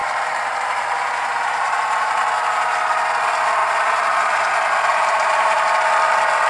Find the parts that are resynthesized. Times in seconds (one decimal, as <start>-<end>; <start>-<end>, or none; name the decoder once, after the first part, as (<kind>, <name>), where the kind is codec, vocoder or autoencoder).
0.0-2.3 (vocoder, BigVGAN v2); 3.6-4.5; 4.9-5.6